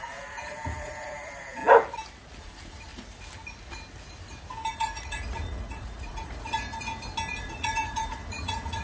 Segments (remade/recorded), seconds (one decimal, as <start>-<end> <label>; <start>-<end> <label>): 0.0-1.6 remade; 1.6-2.4 recorded; 2.4-2.9 remade; 2.9-4.7 recorded; 4.7-6.9 remade; 6.9-7.4 recorded; 7.4-8.8 remade